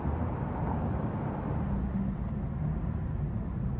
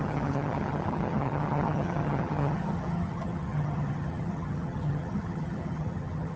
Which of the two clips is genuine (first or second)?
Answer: first